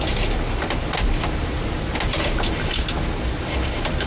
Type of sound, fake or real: real